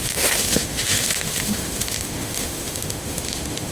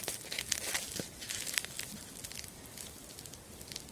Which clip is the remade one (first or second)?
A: first